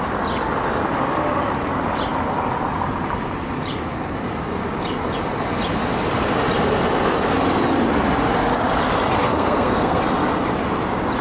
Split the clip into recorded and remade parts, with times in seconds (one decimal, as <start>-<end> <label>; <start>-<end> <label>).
0.0-9.2 recorded; 9.2-10.0 remade; 10.0-11.2 recorded